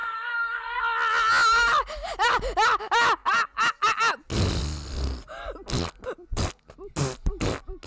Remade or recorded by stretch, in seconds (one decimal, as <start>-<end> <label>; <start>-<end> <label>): 0.0-0.8 remade; 0.8-7.9 recorded